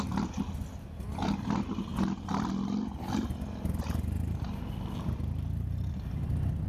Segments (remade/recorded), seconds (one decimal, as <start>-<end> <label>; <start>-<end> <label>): 0.0-6.7 recorded